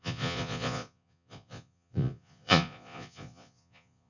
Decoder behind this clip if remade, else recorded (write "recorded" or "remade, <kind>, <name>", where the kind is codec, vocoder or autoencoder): remade, vocoder, Vocos